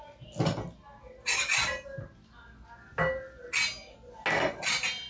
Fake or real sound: real